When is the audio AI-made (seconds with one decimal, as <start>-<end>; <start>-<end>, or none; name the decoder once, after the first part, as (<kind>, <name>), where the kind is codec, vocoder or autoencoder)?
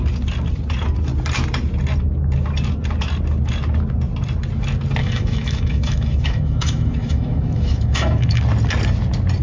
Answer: 5.0-8.4 (autoencoder, DAC-VAE)